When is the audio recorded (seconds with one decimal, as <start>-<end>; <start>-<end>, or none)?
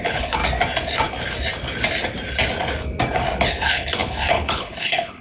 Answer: 0.4-3.5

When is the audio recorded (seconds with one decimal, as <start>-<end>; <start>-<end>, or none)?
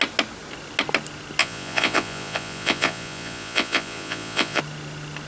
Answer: 0.0-1.4; 4.6-5.3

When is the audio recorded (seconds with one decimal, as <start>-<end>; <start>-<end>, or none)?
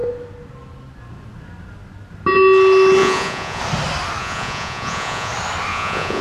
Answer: 0.0-3.0; 3.6-4.2; 5.3-5.7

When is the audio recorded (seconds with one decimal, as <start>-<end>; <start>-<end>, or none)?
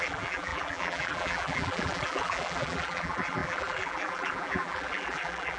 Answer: none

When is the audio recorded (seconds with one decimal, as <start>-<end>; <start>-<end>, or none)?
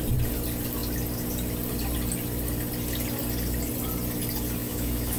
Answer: 0.0-4.6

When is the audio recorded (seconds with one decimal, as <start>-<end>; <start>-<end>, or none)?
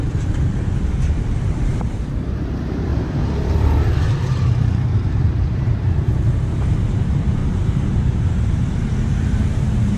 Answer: 2.9-4.1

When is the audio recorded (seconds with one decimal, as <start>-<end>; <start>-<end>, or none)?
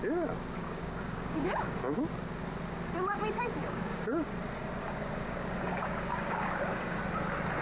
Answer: 0.0-0.6; 2.0-3.6; 4.3-4.8; 7.0-7.6